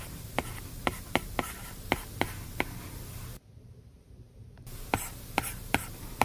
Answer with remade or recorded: remade